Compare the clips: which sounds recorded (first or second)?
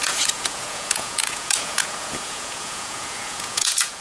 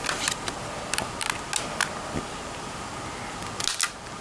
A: second